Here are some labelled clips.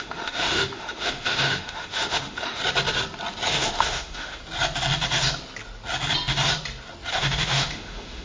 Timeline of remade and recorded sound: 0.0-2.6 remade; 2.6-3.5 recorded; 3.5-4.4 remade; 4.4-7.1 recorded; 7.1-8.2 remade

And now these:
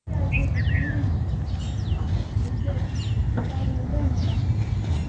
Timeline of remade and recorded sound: 0.0-3.9 recorded; 3.9-4.4 remade; 4.4-5.1 recorded

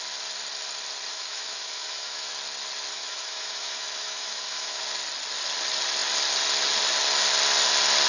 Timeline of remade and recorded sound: 0.0-1.1 recorded; 1.1-2.3 remade; 2.3-2.9 recorded; 2.9-4.8 remade; 4.8-8.1 recorded

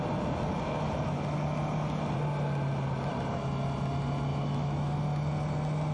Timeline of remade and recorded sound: 0.0-4.3 recorded; 4.3-5.0 remade; 5.0-5.9 recorded

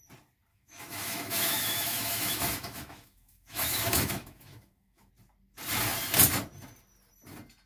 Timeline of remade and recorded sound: 0.0-0.5 recorded; 0.5-5.1 remade; 5.1-7.7 recorded

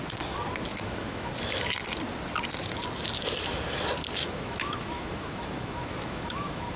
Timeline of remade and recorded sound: 0.0-0.7 recorded; 0.7-1.3 remade; 1.3-4.2 recorded; 4.2-6.8 remade